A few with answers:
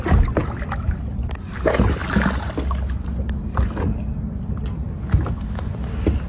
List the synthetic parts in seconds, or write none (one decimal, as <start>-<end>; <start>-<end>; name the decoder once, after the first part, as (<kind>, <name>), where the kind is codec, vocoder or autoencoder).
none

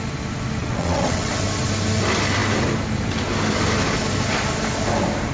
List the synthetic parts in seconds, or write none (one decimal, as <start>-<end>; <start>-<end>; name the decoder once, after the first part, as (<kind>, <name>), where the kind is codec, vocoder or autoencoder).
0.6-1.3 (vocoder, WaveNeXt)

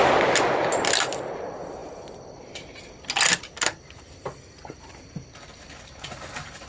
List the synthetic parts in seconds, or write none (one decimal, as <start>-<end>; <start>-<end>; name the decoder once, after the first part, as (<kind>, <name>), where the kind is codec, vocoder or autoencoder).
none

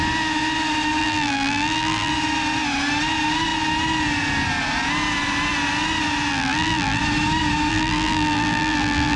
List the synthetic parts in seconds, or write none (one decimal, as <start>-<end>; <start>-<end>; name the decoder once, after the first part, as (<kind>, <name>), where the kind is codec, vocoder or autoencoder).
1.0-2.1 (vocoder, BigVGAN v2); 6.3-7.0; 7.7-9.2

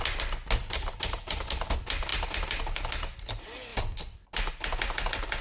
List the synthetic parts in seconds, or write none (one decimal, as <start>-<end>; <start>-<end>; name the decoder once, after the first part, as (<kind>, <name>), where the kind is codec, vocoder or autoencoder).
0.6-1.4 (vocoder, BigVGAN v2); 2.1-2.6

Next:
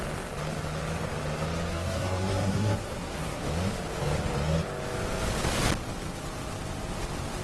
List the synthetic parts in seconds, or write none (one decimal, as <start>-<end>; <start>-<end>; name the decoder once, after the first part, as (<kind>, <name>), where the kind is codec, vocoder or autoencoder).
1.7-3.4 (codec, SNAC)